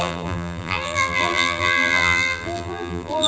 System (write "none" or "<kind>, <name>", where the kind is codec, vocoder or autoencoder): vocoder, BigVGAN v2